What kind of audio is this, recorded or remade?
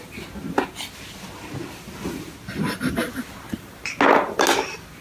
recorded